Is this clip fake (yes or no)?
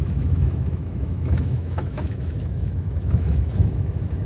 yes